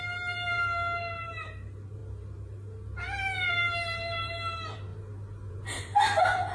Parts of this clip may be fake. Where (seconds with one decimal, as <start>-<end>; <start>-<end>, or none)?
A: 0.0-2.0; 3.5-4.9; 5.5-6.5